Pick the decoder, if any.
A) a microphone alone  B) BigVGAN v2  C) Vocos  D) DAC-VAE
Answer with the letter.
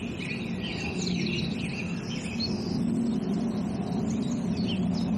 A